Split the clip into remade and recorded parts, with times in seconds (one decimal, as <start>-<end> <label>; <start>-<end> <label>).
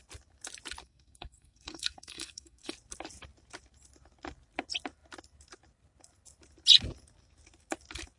0.0-0.8 recorded; 0.8-2.7 remade; 2.7-8.2 recorded